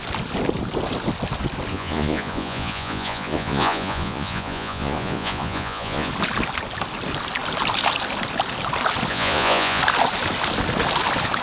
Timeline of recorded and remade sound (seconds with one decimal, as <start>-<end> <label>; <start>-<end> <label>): 0.0-1.7 recorded; 1.7-6.1 remade; 6.1-9.1 recorded; 9.1-9.8 remade; 9.8-11.4 recorded